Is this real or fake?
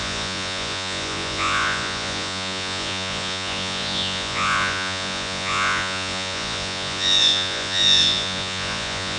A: fake